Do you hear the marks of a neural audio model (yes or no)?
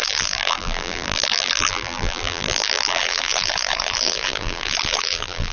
yes